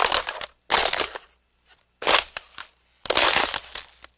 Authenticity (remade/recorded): recorded